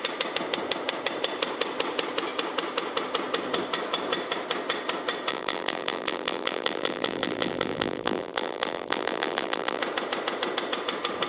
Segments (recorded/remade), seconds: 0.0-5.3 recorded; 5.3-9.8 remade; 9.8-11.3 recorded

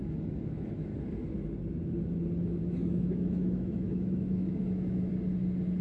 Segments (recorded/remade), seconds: 0.0-0.9 remade; 0.9-2.6 recorded; 2.6-5.1 remade; 5.1-5.8 recorded

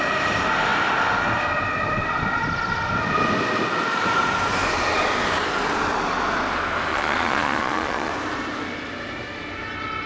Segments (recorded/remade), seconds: 0.0-6.9 recorded; 6.9-8.1 remade; 8.1-10.1 recorded